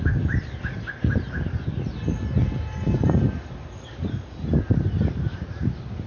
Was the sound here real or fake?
real